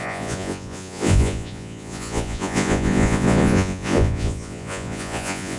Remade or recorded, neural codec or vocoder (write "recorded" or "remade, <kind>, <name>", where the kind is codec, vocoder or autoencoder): remade, vocoder, Vocos